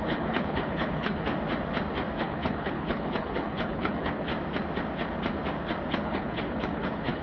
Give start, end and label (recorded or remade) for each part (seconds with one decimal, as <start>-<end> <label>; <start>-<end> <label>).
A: 0.0-1.3 remade; 1.3-2.2 recorded; 2.2-4.3 remade; 4.3-5.9 recorded; 5.9-7.2 remade

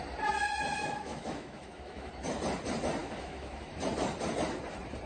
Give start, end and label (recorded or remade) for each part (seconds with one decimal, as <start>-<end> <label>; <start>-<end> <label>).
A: 0.0-0.8 recorded; 0.8-2.1 remade; 2.1-3.0 recorded; 3.0-3.8 remade; 3.8-5.1 recorded

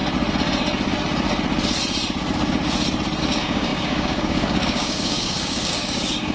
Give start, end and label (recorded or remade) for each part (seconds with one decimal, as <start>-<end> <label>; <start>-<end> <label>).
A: 0.0-3.2 recorded; 3.2-6.3 remade

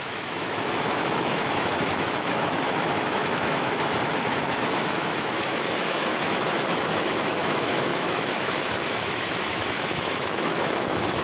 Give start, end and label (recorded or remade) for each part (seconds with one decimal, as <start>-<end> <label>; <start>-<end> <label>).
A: 0.0-11.2 remade

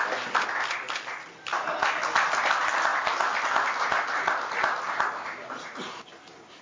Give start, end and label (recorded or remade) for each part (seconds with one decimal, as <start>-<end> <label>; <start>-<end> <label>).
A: 0.0-6.6 recorded

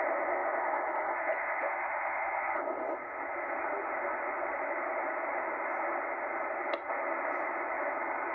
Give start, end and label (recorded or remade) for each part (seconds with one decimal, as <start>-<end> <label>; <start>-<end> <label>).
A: 0.0-8.3 recorded